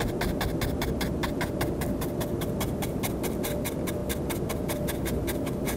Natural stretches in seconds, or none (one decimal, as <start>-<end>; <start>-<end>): 0.0-5.8